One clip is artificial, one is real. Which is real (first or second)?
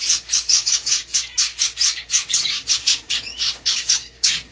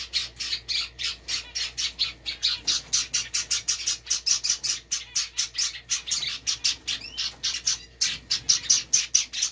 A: second